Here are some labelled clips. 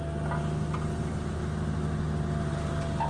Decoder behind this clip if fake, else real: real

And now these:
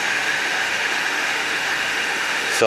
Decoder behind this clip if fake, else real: fake, autoencoder, DAC-VAE